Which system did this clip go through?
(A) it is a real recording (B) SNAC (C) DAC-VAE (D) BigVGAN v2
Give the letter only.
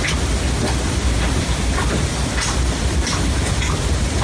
A